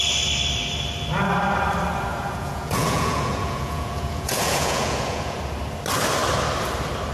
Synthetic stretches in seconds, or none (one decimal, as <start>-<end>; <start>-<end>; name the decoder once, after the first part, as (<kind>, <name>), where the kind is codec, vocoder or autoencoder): 2.1-5.4 (vocoder, Vocos)